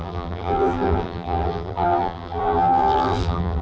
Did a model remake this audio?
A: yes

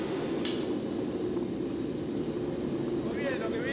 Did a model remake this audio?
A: no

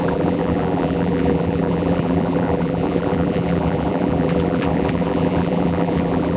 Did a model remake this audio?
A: yes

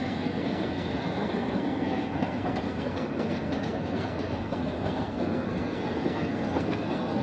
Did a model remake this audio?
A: yes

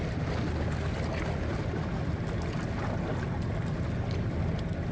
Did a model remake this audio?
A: no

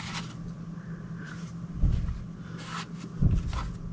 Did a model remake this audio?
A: no